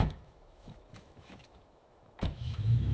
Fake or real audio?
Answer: fake